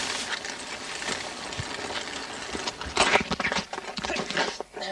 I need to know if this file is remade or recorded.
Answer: recorded